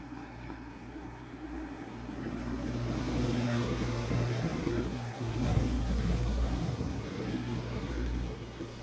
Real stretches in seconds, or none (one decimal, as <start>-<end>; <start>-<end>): none